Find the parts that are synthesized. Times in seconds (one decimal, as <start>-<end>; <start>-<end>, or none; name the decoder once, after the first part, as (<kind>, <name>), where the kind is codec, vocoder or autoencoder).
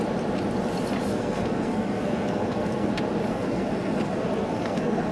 1.1-2.9 (codec, SNAC); 3.3-5.1